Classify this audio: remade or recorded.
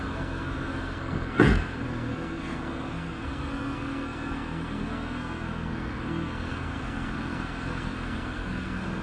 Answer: remade